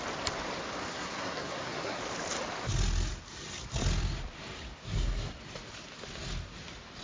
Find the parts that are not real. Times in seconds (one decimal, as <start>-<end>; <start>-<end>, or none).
0.9-2.0; 4.8-5.4